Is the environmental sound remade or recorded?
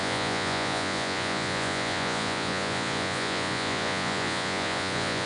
remade